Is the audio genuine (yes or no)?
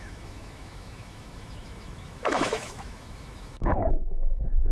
no